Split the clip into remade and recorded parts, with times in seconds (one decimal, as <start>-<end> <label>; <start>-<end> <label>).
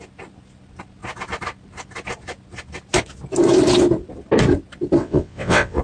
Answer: 0.0-5.0 recorded; 5.0-5.8 remade